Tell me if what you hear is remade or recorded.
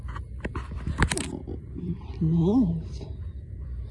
recorded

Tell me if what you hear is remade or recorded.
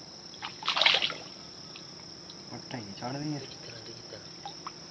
remade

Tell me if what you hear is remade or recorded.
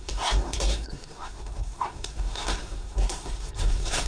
remade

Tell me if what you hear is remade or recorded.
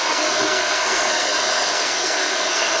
remade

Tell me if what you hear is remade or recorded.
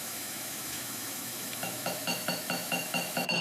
remade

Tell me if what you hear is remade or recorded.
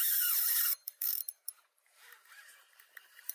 remade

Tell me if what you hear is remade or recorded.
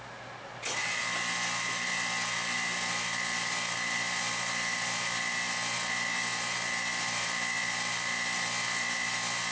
recorded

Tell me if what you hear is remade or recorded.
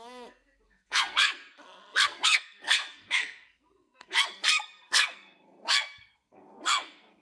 remade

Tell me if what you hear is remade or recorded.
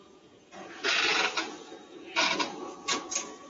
remade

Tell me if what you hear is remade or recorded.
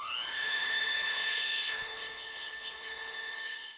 remade